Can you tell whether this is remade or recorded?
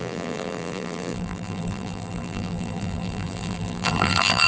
remade